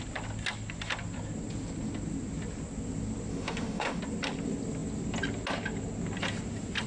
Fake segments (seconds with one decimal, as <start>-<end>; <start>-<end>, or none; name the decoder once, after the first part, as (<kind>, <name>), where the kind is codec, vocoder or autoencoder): 3.3-4.0 (autoencoder, DAC-VAE)